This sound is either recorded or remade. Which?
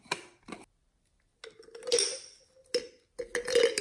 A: recorded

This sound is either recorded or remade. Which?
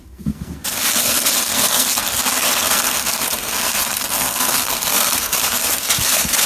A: remade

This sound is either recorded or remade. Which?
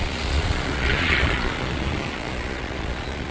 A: remade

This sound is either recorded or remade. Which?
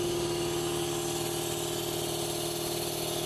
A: recorded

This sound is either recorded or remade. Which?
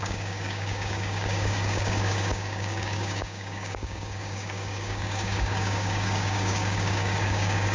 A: remade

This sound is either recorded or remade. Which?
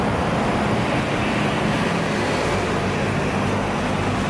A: recorded